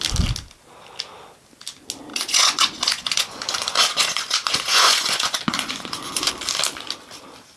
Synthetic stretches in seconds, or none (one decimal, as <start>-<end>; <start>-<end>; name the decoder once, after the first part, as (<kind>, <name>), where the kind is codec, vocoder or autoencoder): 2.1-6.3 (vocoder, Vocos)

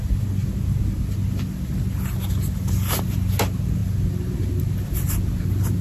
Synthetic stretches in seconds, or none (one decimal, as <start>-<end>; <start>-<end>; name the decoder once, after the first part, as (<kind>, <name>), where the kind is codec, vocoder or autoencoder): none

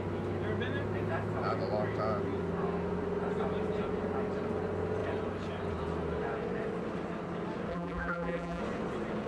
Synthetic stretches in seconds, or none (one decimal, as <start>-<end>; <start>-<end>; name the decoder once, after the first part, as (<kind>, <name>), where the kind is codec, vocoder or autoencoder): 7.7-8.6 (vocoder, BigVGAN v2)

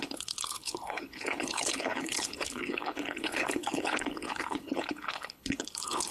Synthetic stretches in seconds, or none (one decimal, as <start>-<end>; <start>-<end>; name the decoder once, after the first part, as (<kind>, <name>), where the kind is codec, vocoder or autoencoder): 0.0-6.1 (codec, HILCodec)